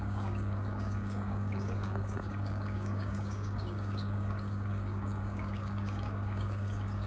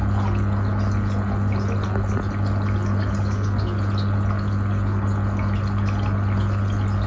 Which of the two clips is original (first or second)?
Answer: second